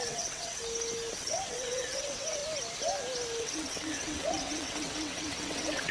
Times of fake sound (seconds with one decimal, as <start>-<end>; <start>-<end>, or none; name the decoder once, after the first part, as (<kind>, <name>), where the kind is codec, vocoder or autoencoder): 0.0-0.6 (vocoder, WaveNeXt); 1.1-2.4; 3.4-5.9